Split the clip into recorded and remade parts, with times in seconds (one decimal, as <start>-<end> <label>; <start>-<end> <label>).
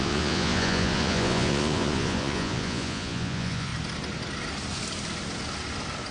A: 0.0-3.7 remade; 3.7-6.1 recorded